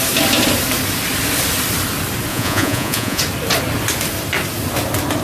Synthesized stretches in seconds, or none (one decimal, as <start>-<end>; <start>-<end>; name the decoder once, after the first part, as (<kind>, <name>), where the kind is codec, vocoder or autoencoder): 2.3-3.2 (vocoder, Vocos)

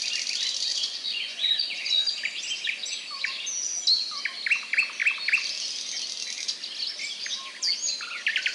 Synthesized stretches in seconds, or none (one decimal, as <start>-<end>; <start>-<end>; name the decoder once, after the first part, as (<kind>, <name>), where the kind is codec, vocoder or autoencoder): 0.7-2.1 (vocoder, Vocos)

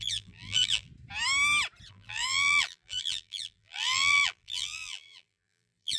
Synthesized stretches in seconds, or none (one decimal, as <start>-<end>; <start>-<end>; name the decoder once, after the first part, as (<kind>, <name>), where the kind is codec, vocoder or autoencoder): 0.0-0.9 (vocoder, BigVGAN v2); 1.9-6.0

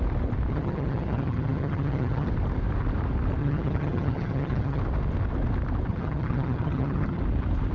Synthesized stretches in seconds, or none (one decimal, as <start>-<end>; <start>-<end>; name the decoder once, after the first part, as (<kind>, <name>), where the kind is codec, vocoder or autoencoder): 0.5-2.3 (vocoder, HiFi-GAN); 3.4-4.8; 5.9-7.2

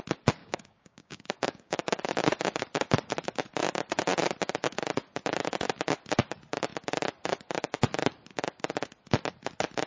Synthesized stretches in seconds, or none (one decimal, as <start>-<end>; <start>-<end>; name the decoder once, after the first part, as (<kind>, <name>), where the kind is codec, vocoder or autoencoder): 0.4-2.0 (codec, DAC)

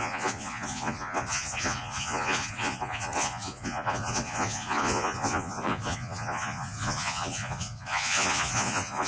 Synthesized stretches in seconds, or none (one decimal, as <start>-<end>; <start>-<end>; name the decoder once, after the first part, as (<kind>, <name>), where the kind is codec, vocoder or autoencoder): 0.0-9.1 (vocoder, Vocos)

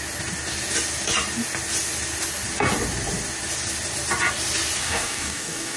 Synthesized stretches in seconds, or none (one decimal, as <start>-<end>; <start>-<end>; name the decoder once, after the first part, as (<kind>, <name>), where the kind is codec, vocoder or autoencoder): 4.8-5.8 (codec, DAC)